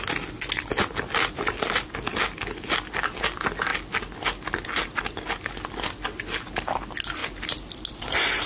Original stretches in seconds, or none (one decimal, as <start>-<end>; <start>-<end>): 0.0-8.5